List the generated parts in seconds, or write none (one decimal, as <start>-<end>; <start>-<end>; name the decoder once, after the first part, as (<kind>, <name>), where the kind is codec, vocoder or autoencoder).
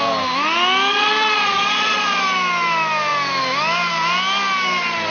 0.9-2.2 (vocoder, Vocos)